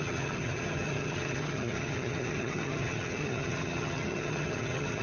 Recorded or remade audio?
remade